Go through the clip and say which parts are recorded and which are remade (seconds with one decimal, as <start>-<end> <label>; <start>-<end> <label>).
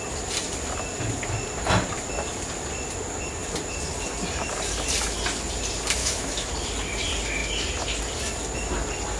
0.0-6.0 recorded; 6.0-6.5 remade; 6.5-9.2 recorded